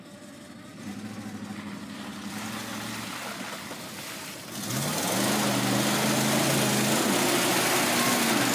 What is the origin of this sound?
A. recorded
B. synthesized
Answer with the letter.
A